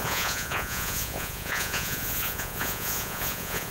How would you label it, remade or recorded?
remade